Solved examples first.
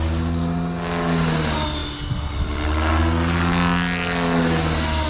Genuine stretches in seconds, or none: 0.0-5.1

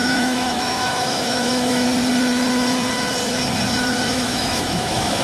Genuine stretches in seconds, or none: 1.9-4.1

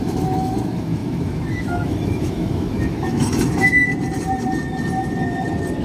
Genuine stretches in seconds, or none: 3.9-5.8

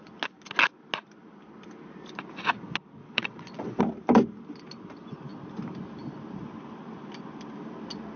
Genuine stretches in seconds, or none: 0.0-3.0; 3.8-8.2

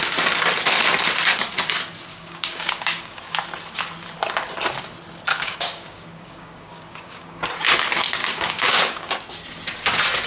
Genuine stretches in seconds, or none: 0.0-2.1; 3.2-5.3; 7.5-8.2; 9.1-10.3

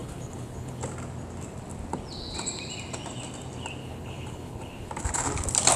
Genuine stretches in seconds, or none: 0.8-3.8; 4.9-5.8

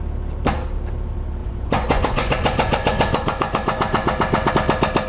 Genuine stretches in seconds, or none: 0.0-1.4; 4.5-5.1